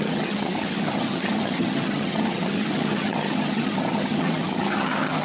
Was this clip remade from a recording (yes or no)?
yes